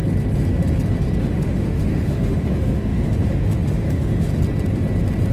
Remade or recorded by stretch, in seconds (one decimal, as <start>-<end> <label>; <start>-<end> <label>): 0.0-1.2 recorded; 1.2-4.3 remade; 4.3-5.3 recorded